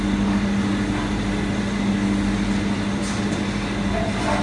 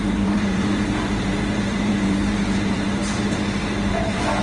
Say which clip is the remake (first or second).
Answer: second